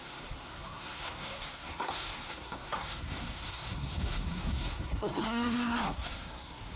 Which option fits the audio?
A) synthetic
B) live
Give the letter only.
A